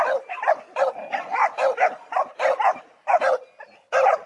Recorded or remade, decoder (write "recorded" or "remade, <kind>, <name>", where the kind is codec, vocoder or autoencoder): recorded